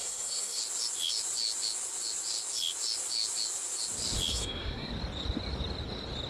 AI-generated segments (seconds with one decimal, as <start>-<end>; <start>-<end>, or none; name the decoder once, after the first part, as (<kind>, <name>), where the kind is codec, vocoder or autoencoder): 0.0-0.6 (codec, SNAC); 4.3-4.9